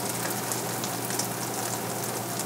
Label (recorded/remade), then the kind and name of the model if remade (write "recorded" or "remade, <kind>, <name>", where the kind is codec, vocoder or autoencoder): recorded